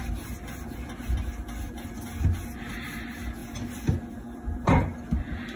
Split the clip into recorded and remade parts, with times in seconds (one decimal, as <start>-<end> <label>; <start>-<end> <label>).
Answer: 0.0-3.4 recorded; 3.4-5.6 remade